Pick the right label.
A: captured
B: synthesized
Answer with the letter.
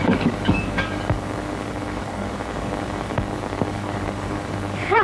B